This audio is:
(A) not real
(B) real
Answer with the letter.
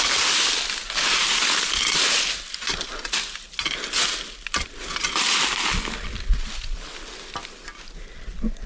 B